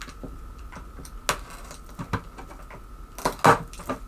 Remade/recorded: recorded